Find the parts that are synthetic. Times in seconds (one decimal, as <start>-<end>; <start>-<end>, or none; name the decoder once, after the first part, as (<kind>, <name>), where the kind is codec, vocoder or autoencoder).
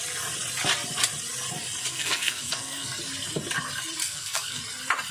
1.9-3.0 (codec, SNAC); 4.0-4.6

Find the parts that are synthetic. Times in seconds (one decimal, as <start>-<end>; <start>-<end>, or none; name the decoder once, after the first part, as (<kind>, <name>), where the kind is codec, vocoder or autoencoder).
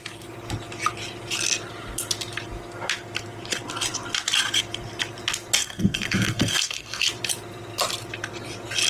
5.6-7.0 (codec, SNAC)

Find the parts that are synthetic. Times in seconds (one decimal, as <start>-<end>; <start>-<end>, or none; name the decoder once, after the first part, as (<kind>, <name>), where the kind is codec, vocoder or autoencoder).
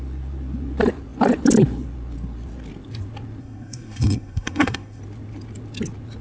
3.4-5.0 (codec, SNAC)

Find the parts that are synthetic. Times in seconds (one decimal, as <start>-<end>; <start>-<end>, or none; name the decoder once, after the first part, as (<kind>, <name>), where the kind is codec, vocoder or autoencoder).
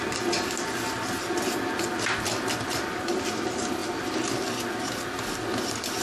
none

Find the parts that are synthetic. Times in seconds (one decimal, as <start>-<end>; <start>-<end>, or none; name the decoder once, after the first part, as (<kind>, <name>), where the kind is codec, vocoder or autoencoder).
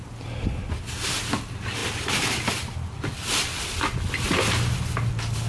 none